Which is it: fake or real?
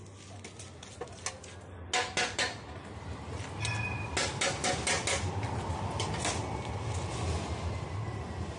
real